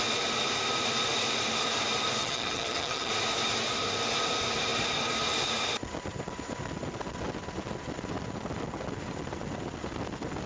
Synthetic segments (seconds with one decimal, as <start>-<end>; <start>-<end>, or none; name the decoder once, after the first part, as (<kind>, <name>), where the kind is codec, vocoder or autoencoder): 2.2-3.1 (vocoder, HiFi-GAN)